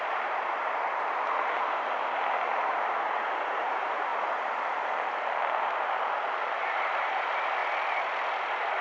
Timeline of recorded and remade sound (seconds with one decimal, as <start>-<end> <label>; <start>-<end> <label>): 0.0-4.1 remade; 4.1-6.6 recorded; 6.6-7.6 remade; 7.6-8.4 recorded; 8.4-8.8 remade